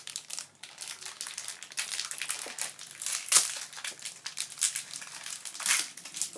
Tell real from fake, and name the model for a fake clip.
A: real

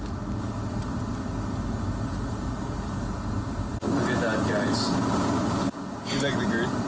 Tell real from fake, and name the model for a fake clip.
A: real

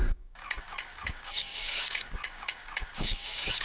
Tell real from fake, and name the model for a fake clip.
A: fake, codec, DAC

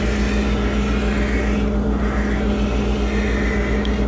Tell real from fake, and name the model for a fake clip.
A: real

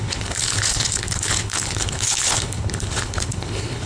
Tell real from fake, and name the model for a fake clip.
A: fake, codec, HILCodec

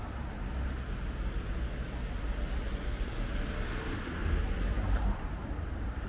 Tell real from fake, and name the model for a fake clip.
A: real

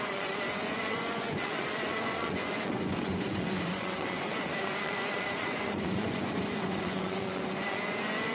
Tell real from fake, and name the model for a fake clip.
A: fake, vocoder, Vocos